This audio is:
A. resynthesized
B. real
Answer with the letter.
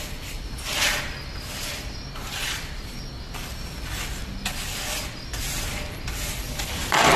B